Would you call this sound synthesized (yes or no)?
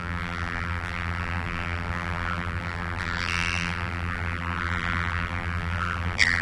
yes